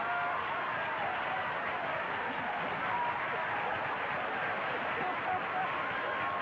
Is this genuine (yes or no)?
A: yes